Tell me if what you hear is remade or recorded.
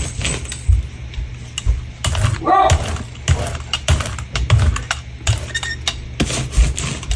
recorded